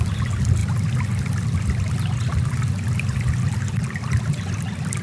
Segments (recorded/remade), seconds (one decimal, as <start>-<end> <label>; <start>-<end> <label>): 0.0-5.0 recorded